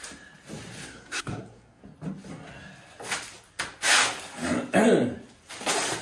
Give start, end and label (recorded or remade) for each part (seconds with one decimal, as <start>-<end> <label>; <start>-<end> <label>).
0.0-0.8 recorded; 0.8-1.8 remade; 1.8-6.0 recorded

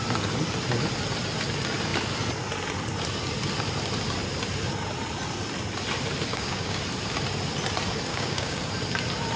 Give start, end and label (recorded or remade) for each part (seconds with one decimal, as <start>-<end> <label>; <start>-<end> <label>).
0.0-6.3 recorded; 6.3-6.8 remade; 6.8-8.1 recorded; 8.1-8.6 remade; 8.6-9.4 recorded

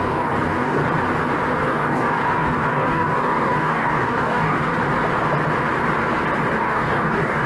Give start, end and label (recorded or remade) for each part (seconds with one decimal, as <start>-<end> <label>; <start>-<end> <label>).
0.0-0.8 remade; 0.8-1.6 recorded; 1.6-4.7 remade; 4.7-6.6 recorded; 6.6-7.5 remade